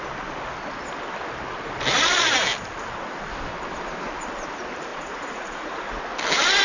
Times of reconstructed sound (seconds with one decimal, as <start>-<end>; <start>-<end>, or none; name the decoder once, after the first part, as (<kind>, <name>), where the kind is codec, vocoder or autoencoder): 4.9-6.0 (vocoder, Vocos)